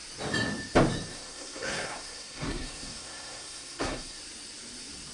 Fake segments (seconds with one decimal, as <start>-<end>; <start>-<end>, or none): 1.1-4.2